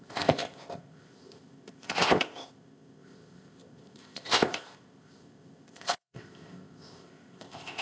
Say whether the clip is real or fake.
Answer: fake